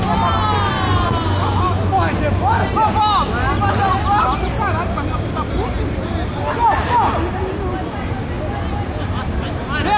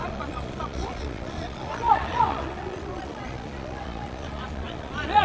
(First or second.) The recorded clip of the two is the first